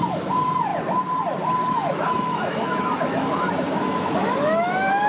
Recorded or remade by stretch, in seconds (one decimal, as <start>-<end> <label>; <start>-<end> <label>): 0.0-1.6 recorded; 1.6-5.1 remade